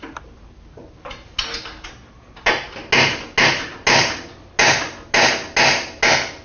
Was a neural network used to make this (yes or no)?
no